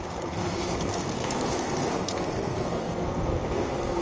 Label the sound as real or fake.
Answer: fake